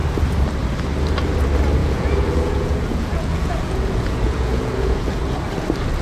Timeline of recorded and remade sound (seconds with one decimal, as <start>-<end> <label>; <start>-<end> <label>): 0.0-1.8 recorded; 1.8-5.1 remade; 5.1-6.0 recorded